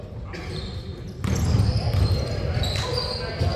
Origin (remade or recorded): recorded